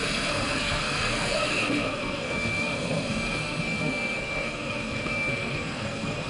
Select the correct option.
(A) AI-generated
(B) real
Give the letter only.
A